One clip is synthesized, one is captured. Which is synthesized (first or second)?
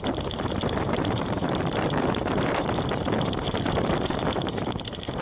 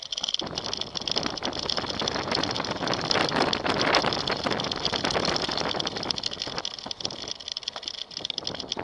first